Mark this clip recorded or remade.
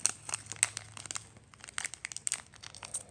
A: recorded